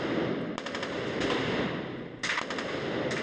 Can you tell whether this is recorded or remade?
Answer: recorded